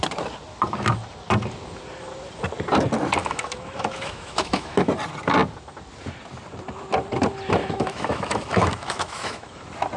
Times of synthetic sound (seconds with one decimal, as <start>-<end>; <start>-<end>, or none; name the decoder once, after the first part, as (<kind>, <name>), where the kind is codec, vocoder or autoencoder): 3.2-4.9 (autoencoder, DAC-VAE); 7.6-9.6